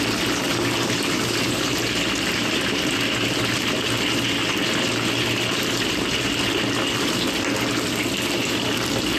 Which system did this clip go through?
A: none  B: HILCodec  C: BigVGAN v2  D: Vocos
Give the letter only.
A